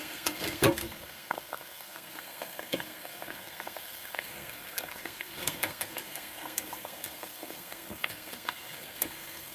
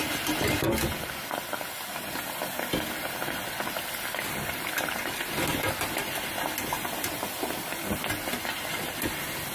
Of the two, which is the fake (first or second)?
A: first